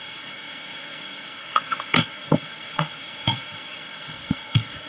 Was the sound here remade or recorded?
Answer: remade